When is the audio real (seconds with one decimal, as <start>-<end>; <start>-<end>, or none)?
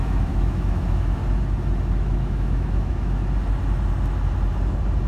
1.2-2.0; 3.2-5.1